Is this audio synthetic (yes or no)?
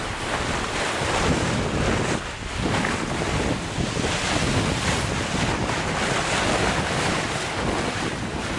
no